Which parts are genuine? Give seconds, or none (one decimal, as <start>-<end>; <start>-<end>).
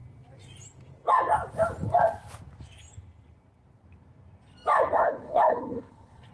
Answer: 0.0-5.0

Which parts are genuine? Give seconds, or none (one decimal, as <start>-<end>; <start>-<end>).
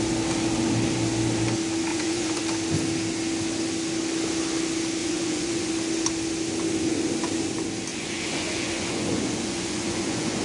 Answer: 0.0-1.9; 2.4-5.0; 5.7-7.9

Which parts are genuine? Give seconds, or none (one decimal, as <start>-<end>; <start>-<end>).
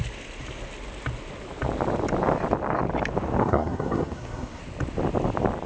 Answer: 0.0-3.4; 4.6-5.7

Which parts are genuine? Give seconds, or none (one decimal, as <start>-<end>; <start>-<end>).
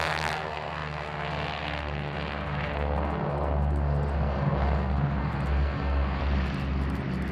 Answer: 6.2-7.3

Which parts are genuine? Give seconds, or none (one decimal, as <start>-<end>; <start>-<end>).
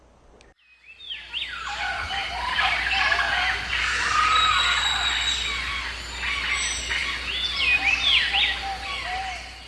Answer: 0.0-9.7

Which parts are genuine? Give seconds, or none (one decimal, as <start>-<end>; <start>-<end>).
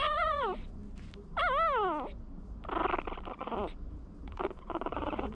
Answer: 0.8-3.3; 3.7-4.2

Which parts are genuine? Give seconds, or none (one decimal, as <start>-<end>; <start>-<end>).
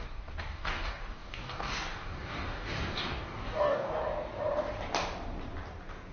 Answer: 4.0-6.1